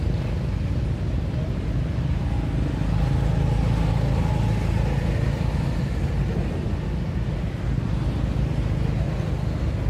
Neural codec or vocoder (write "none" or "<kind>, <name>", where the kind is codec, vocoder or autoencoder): none